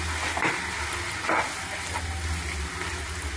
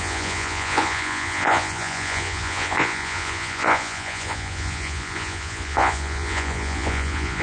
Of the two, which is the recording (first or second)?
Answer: first